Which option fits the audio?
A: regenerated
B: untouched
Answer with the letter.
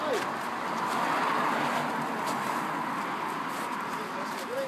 B